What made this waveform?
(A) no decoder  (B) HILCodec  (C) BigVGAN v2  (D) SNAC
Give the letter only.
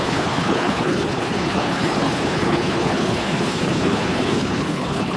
B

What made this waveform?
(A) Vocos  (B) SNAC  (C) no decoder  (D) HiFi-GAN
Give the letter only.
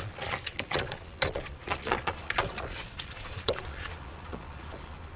A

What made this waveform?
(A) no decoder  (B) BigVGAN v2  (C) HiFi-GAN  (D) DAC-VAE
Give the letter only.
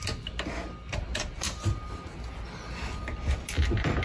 A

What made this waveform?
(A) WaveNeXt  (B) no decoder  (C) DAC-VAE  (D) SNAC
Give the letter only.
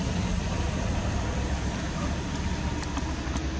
B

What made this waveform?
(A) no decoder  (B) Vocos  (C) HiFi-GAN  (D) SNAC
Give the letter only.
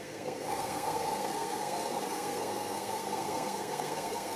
D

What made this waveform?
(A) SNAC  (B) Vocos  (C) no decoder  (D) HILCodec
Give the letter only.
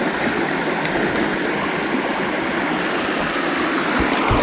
C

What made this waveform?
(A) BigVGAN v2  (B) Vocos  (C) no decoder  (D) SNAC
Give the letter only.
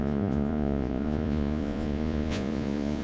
B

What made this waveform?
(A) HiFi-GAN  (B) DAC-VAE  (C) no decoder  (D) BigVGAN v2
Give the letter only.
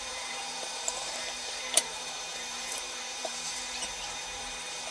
D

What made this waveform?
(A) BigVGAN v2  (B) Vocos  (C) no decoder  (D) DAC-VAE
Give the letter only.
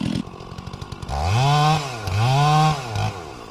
C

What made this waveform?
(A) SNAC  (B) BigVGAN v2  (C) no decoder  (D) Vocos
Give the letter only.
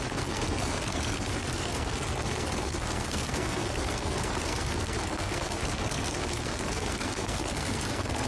A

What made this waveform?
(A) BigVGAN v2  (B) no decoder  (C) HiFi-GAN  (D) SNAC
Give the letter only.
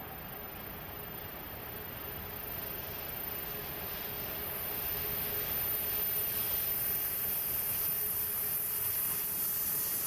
B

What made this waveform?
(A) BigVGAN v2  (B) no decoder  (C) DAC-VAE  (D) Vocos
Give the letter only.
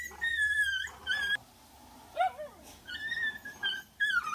B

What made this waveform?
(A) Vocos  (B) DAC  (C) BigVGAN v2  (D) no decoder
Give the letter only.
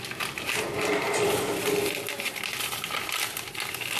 D